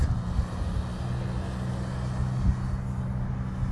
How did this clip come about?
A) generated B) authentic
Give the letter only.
B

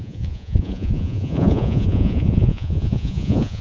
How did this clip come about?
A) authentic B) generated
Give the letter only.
B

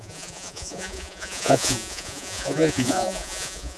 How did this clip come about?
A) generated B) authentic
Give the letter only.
A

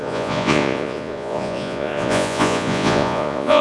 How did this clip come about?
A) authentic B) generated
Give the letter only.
B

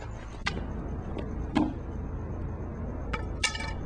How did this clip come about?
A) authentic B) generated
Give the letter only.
A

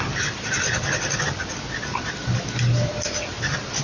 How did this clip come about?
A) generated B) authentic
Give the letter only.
B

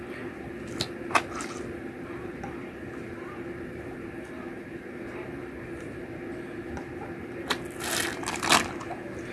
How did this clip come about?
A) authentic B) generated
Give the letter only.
A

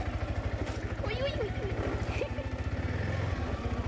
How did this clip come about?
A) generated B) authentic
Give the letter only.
B